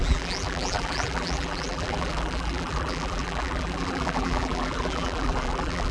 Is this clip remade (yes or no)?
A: yes